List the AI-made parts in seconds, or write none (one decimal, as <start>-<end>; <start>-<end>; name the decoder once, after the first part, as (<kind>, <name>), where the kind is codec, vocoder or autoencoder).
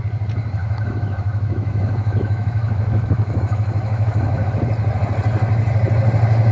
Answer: 0.6-4.5 (autoencoder, DAC-VAE)